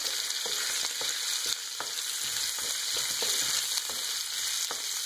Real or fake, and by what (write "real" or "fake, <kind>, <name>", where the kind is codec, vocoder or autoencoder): real